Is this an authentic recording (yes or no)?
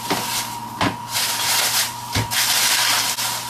yes